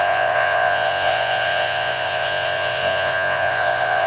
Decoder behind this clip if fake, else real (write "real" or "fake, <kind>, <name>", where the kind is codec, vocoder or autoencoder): fake, vocoder, Vocos